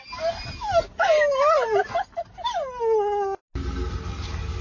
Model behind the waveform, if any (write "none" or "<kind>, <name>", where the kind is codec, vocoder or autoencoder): none